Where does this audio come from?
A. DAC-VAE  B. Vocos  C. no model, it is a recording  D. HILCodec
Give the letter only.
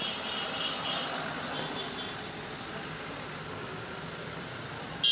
C